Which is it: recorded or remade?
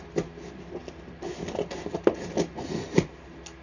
recorded